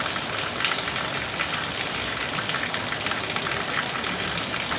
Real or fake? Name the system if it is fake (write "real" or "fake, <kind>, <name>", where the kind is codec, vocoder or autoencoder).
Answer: real